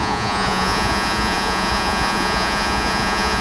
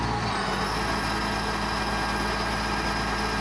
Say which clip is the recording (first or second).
second